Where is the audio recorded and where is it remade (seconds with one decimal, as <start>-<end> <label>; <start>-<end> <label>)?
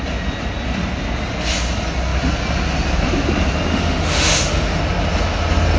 0.0-3.7 recorded; 3.7-4.8 remade; 4.8-5.8 recorded